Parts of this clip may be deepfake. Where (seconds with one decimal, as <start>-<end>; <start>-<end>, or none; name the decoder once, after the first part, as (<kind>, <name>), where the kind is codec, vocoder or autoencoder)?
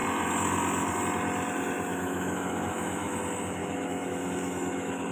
1.9-3.2 (autoencoder, DAC-VAE); 3.6-5.1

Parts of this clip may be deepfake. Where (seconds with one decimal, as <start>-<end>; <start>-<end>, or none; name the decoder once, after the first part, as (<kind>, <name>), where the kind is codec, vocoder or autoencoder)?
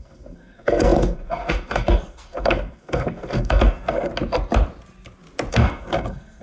0.0-4.1 (codec, SNAC); 5.5-6.4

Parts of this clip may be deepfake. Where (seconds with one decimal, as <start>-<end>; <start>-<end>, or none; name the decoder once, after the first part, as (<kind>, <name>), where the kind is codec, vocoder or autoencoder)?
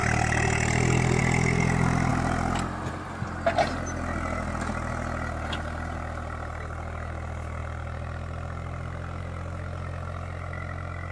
none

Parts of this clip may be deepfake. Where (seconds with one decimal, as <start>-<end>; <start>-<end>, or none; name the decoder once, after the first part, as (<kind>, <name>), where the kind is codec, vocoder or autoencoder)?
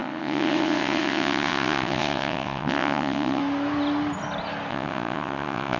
0.0-3.4 (vocoder, WaveNeXt); 4.7-5.8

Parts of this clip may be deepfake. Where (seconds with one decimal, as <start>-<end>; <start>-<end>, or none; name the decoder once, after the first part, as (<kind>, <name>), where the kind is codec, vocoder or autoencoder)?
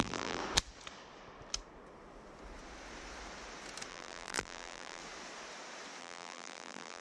0.0-0.4 (vocoder, BigVGAN v2); 3.9-5.0; 6.0-7.0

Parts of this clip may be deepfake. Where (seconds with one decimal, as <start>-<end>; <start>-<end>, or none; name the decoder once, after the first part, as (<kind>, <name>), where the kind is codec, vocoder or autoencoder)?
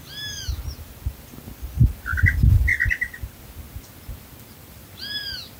none